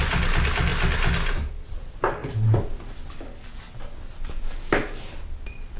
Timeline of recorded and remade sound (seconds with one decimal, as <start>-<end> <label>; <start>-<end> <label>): 0.0-5.8 recorded